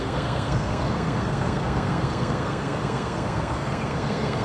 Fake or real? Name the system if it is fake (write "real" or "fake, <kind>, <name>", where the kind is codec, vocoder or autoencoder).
fake, codec, SNAC